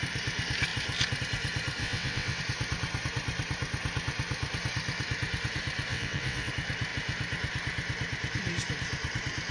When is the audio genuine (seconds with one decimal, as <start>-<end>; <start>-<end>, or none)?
0.0-1.8; 2.4-5.9; 6.5-9.5